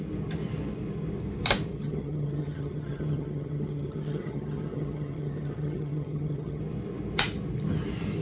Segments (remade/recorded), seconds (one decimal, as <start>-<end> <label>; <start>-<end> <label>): 0.0-1.7 recorded; 1.7-6.6 remade; 6.6-8.2 recorded